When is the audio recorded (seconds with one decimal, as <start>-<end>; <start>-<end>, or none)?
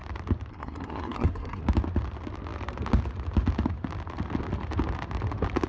0.0-0.5; 1.6-5.7